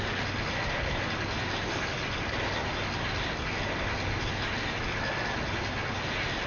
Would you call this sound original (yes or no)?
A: yes